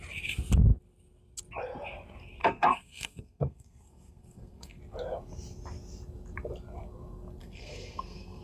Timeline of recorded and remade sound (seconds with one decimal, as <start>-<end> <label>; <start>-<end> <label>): 0.0-2.4 recorded; 2.4-4.8 remade; 4.8-7.4 recorded; 7.4-8.4 remade